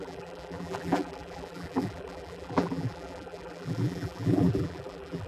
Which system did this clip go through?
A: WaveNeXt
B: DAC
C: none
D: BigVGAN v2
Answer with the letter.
D